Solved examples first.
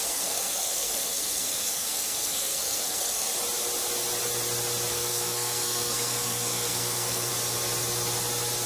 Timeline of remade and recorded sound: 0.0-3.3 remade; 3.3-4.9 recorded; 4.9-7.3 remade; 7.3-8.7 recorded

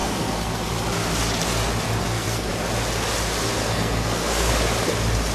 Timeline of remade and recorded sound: 0.0-0.7 remade; 0.7-2.0 recorded; 2.0-2.5 remade; 2.5-3.6 recorded; 3.6-4.5 remade; 4.5-5.3 recorded

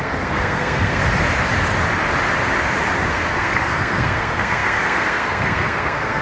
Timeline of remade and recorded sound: 0.0-1.0 remade; 1.0-3.1 recorded; 3.1-6.2 remade

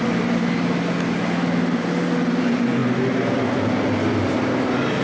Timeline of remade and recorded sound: 0.0-5.0 recorded

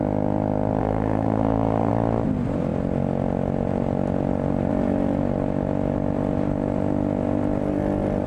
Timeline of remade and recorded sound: 0.0-0.8 recorded; 0.8-1.9 remade; 1.9-8.3 recorded